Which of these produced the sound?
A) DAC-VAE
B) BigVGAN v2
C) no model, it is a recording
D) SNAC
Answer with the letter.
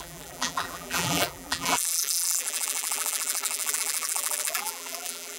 B